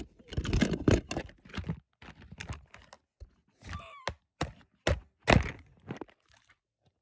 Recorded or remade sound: recorded